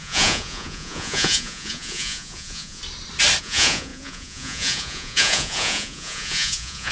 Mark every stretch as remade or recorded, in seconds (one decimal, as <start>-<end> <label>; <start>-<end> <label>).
0.0-2.8 remade; 2.8-3.4 recorded; 3.4-6.9 remade